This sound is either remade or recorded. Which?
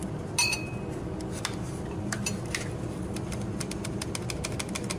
recorded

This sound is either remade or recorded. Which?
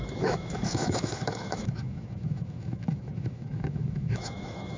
remade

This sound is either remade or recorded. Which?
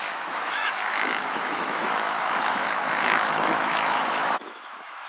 remade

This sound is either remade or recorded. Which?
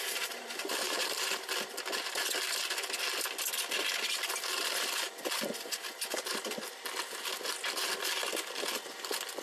recorded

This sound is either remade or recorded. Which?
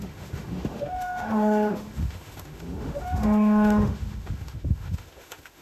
remade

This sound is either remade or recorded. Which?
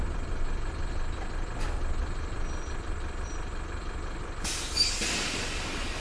recorded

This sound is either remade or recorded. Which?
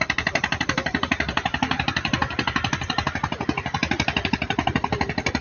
recorded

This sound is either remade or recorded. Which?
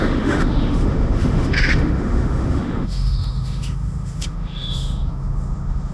remade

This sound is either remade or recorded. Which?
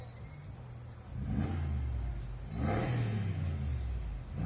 recorded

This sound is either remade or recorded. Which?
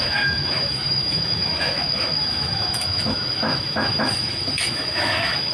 remade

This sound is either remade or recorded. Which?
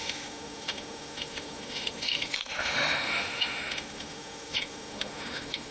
remade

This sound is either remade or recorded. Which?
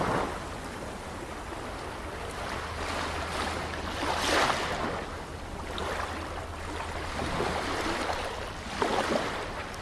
recorded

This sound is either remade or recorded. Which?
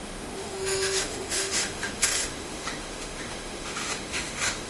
remade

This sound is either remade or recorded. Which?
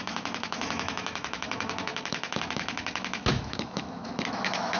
remade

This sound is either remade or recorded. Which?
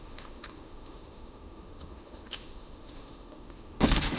remade